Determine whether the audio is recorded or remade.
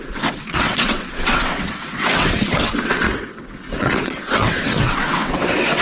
remade